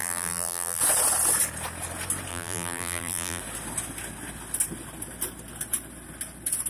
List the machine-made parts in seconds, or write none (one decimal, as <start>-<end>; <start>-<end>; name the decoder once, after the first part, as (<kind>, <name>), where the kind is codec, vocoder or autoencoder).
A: 0.0-0.8 (vocoder, BigVGAN v2); 2.3-3.4

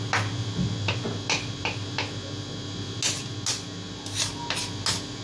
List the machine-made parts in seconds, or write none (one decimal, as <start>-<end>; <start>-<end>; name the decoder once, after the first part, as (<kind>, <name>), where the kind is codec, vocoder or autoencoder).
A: none

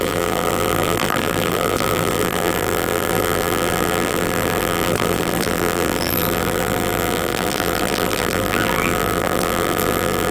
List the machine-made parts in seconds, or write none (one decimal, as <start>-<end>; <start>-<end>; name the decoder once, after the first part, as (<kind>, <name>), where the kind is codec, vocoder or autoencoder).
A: 0.0-10.3 (vocoder, BigVGAN v2)

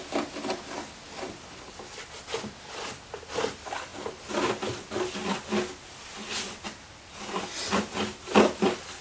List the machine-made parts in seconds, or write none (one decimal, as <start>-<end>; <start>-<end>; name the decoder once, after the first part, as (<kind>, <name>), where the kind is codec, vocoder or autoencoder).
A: none